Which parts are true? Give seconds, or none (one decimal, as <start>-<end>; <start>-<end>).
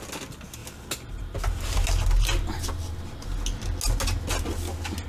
0.0-5.1